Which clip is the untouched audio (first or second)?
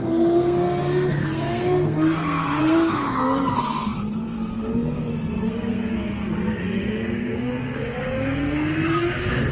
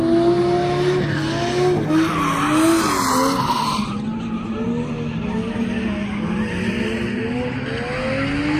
second